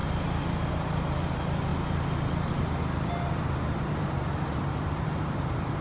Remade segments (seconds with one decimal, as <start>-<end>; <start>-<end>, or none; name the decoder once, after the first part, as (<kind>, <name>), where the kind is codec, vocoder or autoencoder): 0.7-1.7 (vocoder, BigVGAN v2); 2.6-5.8